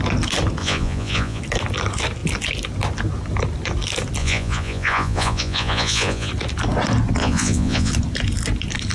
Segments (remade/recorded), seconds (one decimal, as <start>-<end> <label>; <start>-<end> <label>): 0.0-0.6 recorded; 0.6-1.4 remade; 1.4-4.2 recorded; 4.2-6.3 remade; 6.3-7.2 recorded; 7.2-7.9 remade; 7.9-8.9 recorded